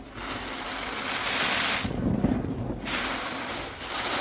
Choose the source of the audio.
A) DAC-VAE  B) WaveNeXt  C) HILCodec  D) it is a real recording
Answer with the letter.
D